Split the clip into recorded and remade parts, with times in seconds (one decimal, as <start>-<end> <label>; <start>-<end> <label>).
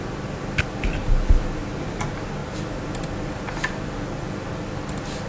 0.0-5.3 recorded